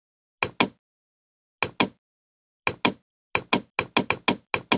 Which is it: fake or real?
real